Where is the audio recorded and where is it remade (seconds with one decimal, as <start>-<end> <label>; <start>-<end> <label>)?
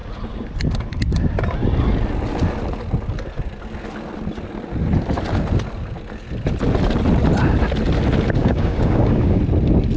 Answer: 0.0-8.4 recorded; 8.4-9.4 remade; 9.4-10.0 recorded